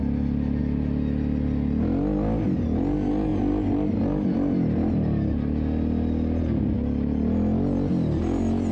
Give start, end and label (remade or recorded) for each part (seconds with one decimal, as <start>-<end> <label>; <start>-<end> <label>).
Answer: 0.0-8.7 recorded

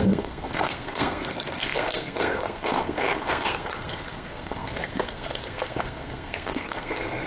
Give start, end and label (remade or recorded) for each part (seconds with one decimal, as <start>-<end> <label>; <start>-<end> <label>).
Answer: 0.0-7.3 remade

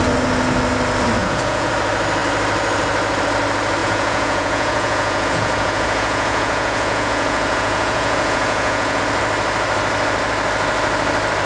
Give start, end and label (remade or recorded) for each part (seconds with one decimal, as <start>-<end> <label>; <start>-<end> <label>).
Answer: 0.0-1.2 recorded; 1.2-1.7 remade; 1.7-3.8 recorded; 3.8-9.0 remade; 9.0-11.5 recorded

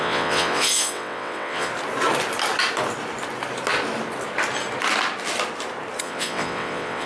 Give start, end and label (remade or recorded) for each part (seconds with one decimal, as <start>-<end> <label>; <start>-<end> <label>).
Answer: 0.0-1.7 remade; 1.7-6.0 recorded; 6.0-7.1 remade

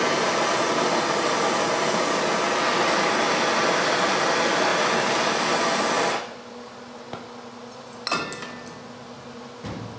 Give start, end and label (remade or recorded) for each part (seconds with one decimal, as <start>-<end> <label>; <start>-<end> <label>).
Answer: 0.0-10.0 recorded